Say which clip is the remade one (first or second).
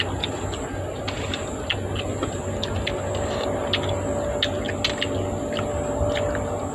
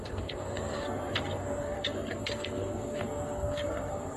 second